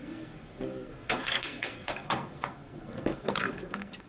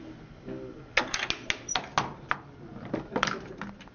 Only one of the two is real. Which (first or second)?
second